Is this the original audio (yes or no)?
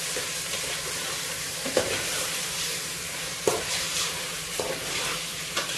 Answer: no